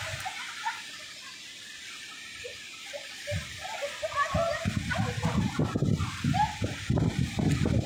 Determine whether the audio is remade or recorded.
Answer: recorded